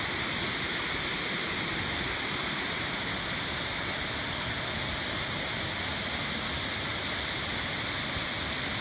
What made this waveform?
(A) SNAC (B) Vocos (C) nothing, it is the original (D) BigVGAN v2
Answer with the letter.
C